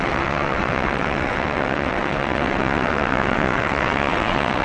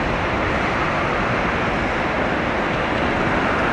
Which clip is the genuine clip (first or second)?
second